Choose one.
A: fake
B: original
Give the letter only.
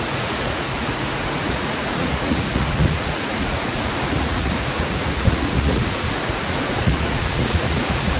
A